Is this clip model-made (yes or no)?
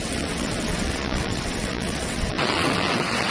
yes